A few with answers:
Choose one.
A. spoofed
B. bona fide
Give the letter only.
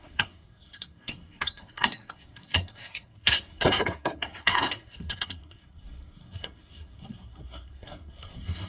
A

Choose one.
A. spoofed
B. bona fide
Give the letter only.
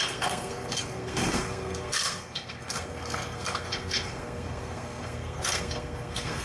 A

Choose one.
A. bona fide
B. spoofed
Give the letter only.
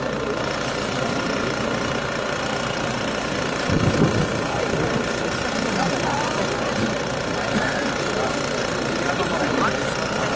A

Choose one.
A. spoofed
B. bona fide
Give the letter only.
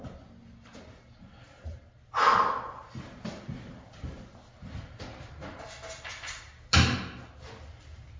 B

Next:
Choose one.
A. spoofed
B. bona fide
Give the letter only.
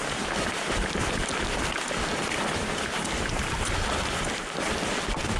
B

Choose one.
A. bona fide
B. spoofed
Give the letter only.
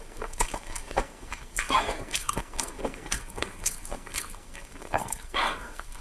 B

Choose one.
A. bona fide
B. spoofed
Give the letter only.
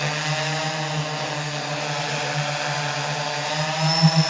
A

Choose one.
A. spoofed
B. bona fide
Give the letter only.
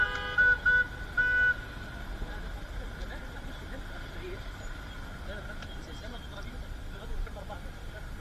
B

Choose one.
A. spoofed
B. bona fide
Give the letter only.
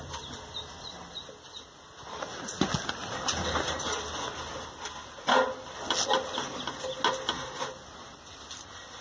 B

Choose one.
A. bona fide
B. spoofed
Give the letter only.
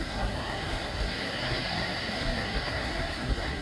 B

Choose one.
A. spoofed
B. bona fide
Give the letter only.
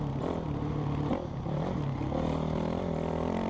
B